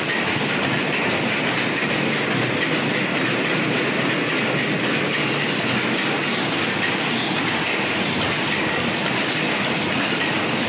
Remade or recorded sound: recorded